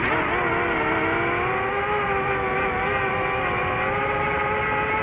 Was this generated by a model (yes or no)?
no